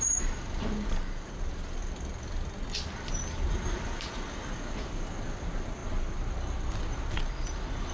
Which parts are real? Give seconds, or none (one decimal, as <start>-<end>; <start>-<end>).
0.0-7.9